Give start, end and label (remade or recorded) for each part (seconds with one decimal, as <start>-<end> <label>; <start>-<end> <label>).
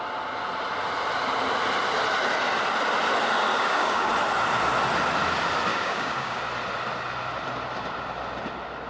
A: 0.0-3.5 recorded; 3.5-4.1 remade; 4.1-5.7 recorded; 5.7-6.4 remade; 6.4-8.9 recorded